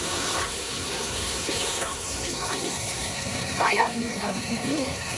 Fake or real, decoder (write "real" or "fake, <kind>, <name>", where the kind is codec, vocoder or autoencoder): fake, codec, SNAC